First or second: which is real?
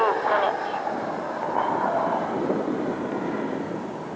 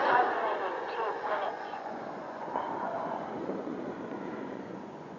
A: first